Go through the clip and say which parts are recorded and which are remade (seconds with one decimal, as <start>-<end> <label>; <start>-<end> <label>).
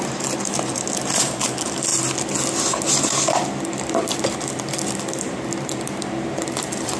0.0-7.0 recorded